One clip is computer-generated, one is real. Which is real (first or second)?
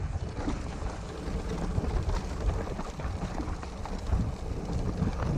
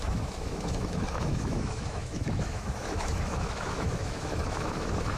first